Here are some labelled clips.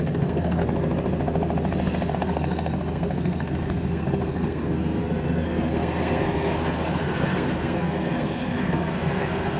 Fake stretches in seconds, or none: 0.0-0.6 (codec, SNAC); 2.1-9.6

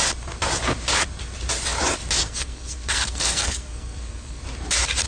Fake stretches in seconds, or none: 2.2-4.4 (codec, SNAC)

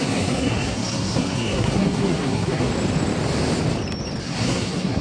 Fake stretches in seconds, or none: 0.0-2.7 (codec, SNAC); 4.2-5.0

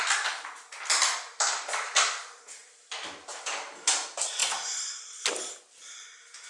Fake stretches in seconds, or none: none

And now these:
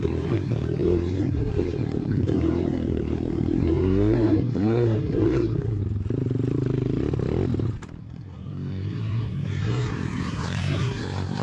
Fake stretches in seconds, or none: 0.0-5.8 (codec, SNAC); 8.0-11.4

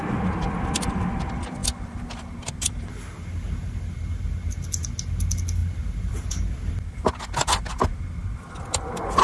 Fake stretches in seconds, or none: none

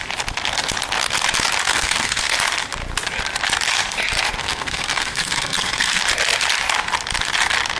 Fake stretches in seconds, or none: 1.7-2.2 (codec, SNAC); 4.4-6.0